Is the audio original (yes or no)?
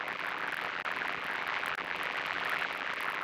no